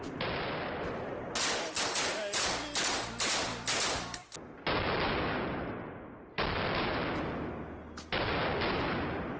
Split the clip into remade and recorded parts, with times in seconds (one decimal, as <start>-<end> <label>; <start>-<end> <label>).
0.0-3.5 recorded; 3.5-4.3 remade; 4.3-9.4 recorded